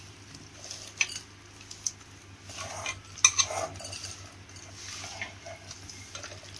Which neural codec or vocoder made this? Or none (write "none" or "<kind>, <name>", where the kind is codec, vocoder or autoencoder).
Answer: none